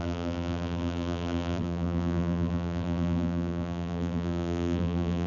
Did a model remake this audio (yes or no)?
yes